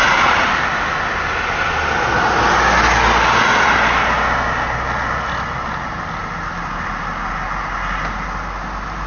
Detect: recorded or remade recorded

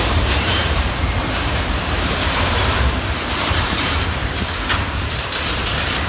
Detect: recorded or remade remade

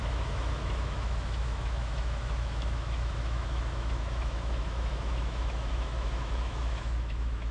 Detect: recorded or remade remade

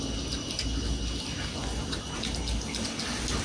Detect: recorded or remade recorded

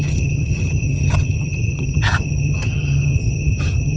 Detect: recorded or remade remade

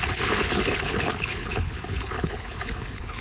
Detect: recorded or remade remade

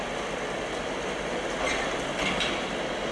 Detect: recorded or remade recorded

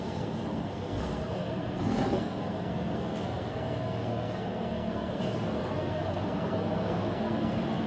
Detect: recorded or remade remade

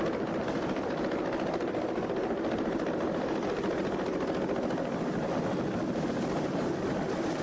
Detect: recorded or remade recorded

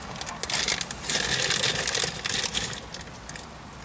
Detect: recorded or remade recorded